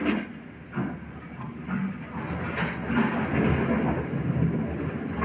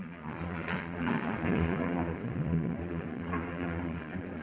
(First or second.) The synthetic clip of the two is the second